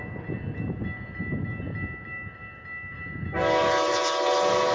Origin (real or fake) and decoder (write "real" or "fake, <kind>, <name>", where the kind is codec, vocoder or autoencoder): real